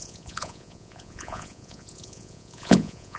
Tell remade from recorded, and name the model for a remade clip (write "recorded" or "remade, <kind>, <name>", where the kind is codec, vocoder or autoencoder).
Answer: remade, vocoder, Vocos